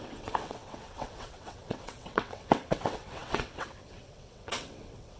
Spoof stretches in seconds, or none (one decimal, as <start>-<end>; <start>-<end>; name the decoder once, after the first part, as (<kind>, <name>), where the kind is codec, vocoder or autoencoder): 0.0-5.2 (vocoder, WaveNeXt)